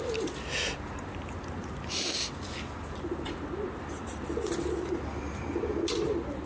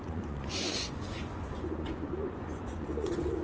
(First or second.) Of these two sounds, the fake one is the second